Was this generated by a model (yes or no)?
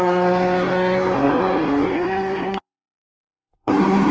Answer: yes